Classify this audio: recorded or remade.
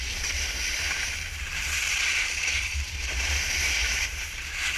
remade